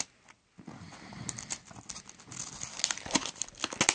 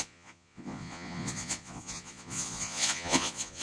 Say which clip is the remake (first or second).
second